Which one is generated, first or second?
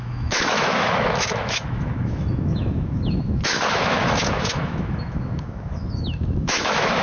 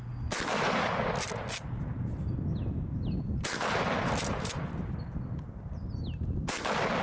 first